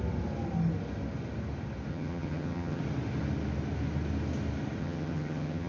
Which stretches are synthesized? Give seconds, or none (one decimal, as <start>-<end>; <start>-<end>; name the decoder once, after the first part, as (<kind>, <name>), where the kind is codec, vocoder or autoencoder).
1.9-2.8 (vocoder, HiFi-GAN); 4.8-5.7